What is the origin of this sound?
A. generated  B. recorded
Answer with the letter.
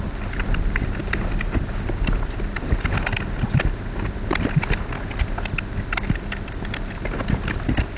B